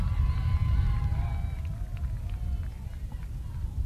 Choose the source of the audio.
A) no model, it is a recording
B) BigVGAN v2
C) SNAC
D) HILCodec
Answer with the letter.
A